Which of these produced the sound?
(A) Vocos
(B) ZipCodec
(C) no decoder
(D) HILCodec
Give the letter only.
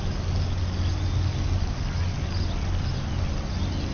C